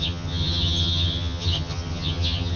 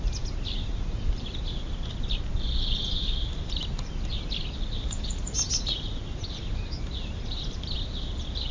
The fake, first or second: first